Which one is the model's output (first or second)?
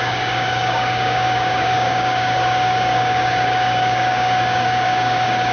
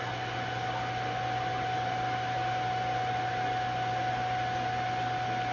first